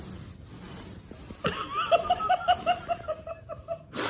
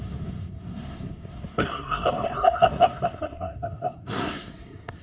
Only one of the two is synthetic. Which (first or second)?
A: second